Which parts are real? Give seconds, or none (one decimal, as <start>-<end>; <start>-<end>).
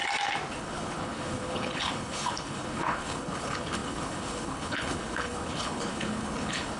0.0-0.5